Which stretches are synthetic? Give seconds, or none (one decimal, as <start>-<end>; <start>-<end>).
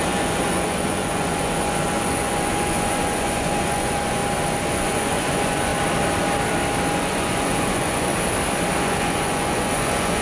0.0-4.2; 4.7-5.7; 6.9-8.1; 8.8-10.2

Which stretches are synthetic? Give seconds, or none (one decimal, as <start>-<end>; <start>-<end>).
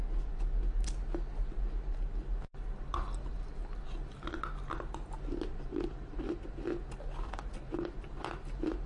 none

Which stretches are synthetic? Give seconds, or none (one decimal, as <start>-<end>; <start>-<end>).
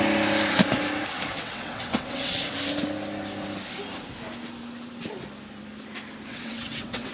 1.3-2.5; 6.3-7.1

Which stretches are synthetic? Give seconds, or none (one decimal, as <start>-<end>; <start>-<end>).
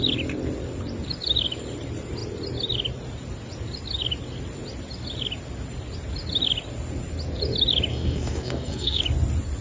7.9-9.0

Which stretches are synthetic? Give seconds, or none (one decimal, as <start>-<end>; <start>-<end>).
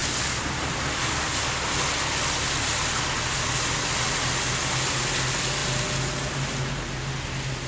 none